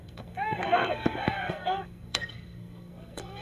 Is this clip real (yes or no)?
no